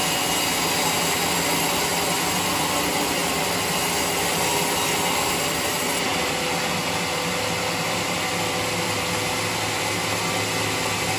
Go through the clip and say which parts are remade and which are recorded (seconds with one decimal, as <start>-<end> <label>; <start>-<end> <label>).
0.0-11.2 recorded